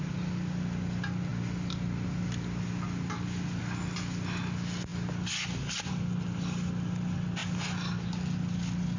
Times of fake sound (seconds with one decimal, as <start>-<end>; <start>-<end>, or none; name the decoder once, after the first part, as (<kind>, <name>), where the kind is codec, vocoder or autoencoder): none